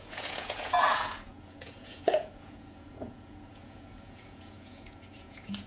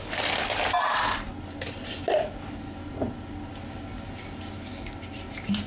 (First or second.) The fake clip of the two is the first